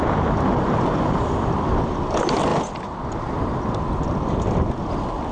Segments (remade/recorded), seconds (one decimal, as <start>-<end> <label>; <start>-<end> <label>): 0.0-5.3 recorded